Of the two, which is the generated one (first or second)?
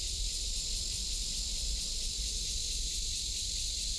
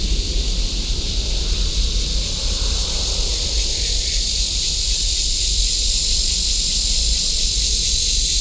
first